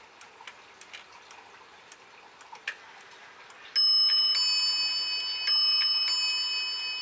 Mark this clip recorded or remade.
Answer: recorded